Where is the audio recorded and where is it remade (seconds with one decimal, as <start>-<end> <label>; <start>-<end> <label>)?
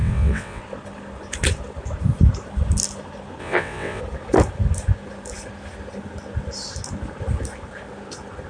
0.0-0.6 remade; 0.6-3.4 recorded; 3.4-4.0 remade; 4.0-8.5 recorded